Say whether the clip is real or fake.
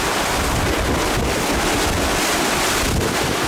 real